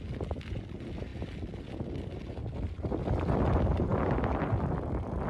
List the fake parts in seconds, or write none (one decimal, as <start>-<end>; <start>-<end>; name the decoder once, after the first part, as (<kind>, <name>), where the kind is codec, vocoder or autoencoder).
none